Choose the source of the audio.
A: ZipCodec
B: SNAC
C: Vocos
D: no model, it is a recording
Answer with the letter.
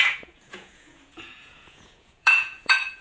C